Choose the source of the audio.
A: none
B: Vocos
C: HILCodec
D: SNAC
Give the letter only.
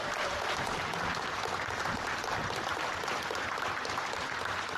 A